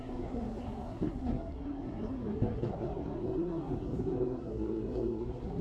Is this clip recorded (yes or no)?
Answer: no